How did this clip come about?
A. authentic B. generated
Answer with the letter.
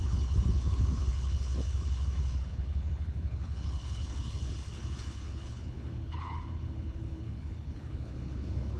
B